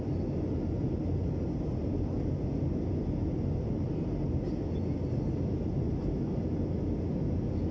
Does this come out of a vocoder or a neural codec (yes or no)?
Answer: no